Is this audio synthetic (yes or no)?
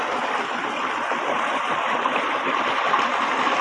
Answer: no